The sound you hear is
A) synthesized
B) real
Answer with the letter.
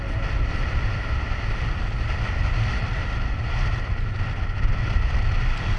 B